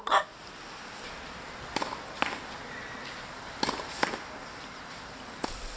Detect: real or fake real